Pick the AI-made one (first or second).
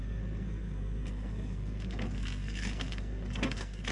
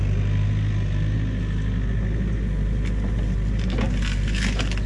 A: first